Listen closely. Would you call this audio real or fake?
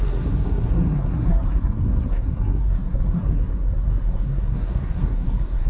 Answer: fake